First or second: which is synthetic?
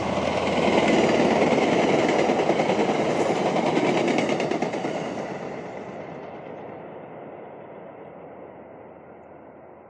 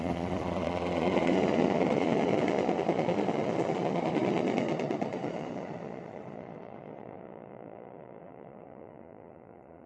second